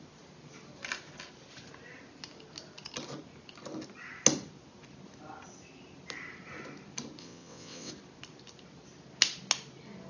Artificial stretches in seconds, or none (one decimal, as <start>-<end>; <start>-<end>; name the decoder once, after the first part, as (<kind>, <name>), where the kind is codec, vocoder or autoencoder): 7.2-7.9 (vocoder, WaveNeXt)